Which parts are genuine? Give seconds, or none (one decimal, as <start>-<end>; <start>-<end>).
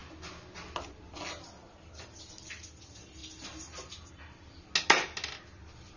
0.0-6.0